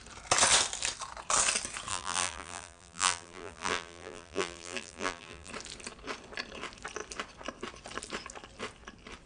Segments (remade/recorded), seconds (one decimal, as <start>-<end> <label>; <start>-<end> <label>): 0.0-1.9 recorded; 1.9-5.5 remade; 5.5-9.3 recorded